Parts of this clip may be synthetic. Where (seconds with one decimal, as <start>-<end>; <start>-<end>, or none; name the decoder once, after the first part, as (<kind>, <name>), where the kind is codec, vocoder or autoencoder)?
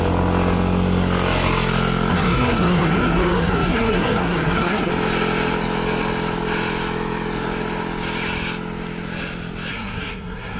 2.1-4.9 (codec, SNAC); 9.7-10.6